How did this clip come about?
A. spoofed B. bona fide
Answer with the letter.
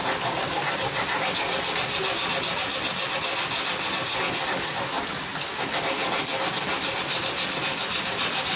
B